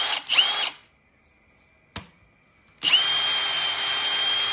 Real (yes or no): yes